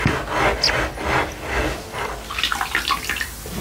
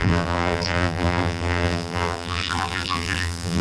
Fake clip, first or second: second